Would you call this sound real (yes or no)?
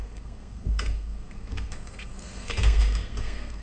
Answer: no